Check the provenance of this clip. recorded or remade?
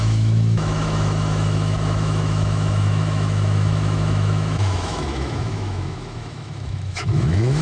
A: remade